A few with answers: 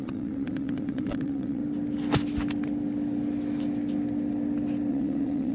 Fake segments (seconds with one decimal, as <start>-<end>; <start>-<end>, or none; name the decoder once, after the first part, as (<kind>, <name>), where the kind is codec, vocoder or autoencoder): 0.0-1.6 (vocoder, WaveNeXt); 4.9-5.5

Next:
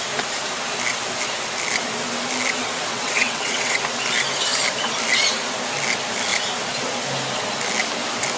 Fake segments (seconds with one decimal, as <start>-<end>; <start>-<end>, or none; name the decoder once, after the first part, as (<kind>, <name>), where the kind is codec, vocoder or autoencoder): 2.9-3.8 (vocoder, WaveNeXt)

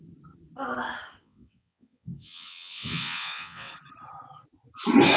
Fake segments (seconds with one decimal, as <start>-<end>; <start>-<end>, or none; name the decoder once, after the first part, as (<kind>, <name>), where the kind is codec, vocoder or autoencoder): 1.2-3.7 (vocoder, WaveNeXt)

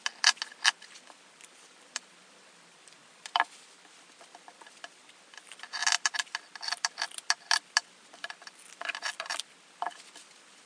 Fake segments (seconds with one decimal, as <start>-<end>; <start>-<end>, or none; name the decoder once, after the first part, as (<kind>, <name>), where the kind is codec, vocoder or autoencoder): none